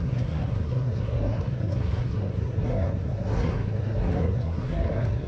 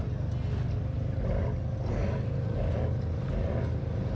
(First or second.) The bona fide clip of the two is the second